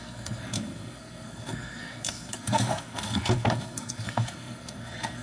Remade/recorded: remade